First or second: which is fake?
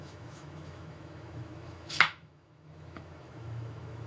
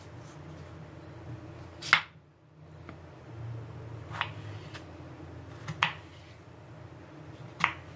first